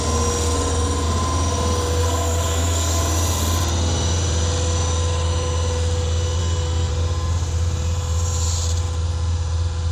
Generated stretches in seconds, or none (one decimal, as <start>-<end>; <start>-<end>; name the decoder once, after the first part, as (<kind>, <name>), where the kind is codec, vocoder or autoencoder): 2.0-3.0 (codec, SNAC); 6.4-6.9